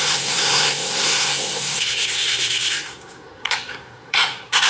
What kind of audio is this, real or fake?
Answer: fake